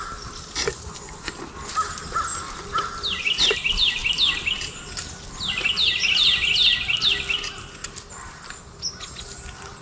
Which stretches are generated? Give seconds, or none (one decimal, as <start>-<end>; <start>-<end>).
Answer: 0.6-1.3